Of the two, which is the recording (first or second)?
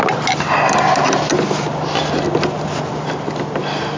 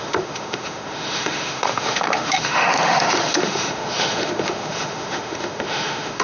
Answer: first